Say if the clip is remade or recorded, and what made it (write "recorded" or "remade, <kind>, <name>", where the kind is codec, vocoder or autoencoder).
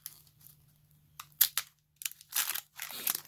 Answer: recorded